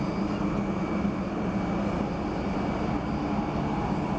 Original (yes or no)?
yes